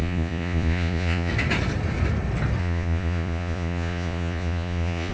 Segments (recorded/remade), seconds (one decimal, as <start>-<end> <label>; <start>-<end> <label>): 0.0-1.3 remade; 1.3-2.6 recorded; 2.6-5.1 remade